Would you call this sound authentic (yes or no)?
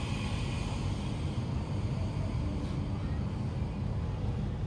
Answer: yes